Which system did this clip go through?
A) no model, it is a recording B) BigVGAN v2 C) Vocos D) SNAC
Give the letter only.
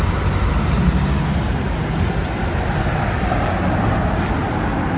A